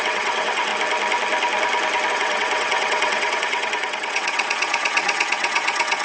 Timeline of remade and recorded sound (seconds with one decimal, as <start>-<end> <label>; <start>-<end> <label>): 0.0-0.7 remade; 0.7-2.1 recorded; 2.1-6.0 remade